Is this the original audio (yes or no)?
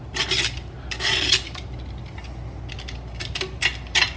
yes